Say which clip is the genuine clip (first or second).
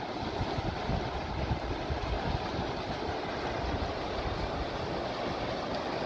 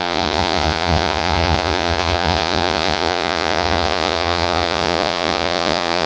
first